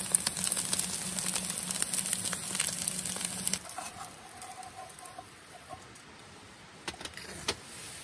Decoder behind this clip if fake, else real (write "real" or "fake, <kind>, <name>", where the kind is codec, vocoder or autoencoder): real